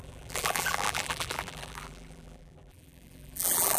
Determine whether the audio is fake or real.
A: fake